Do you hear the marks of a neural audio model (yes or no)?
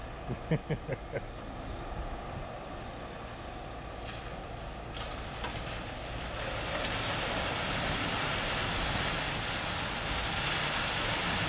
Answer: no